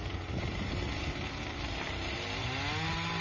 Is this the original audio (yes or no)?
yes